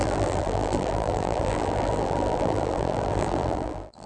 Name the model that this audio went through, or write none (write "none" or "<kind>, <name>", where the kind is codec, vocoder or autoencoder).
vocoder, BigVGAN v2